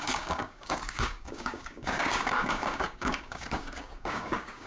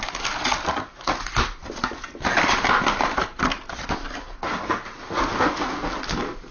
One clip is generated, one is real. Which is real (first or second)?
second